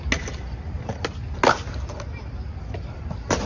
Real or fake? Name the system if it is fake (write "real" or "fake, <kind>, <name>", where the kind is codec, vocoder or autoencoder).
real